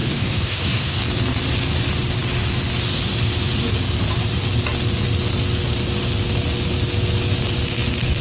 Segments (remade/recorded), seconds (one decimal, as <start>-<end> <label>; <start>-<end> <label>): 0.0-1.0 remade; 1.0-8.2 recorded